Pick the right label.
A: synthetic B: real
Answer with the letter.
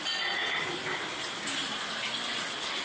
B